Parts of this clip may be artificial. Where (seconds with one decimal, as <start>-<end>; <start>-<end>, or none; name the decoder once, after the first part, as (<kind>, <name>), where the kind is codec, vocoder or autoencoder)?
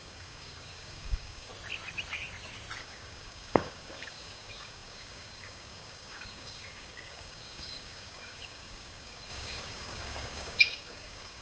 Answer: 0.0-1.5 (codec, DAC); 2.8-11.4